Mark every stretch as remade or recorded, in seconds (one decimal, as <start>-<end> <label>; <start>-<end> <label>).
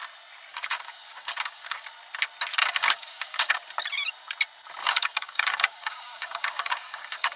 0.0-0.5 recorded; 0.5-1.9 remade; 1.9-2.6 recorded; 2.6-3.5 remade; 3.5-4.8 recorded; 4.8-7.4 remade